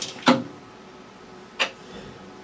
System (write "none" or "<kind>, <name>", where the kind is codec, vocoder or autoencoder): vocoder, BigVGAN v2